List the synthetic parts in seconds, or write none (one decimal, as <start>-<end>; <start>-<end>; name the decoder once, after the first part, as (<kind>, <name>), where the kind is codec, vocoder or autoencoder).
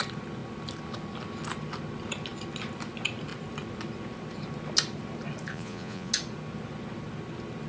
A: 5.5-6.1 (vocoder, Vocos)